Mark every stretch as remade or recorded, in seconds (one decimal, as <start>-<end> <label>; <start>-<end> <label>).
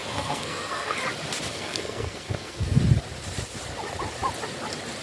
0.0-1.0 remade; 1.0-1.5 recorded; 1.5-2.8 remade; 2.8-5.0 recorded